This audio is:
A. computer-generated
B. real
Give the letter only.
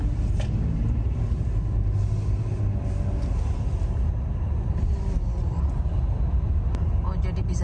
B